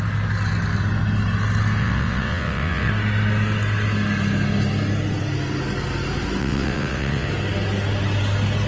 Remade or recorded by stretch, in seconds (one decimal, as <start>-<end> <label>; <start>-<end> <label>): 0.0-1.8 recorded; 1.8-2.9 remade; 2.9-6.4 recorded; 6.4-7.3 remade; 7.3-8.7 recorded